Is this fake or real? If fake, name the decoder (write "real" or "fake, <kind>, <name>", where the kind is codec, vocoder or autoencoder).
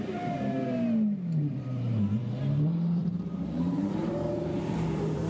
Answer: fake, vocoder, BigVGAN v2